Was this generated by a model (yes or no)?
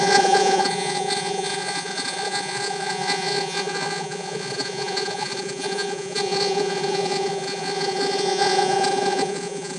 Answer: yes